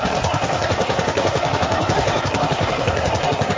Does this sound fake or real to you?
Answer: fake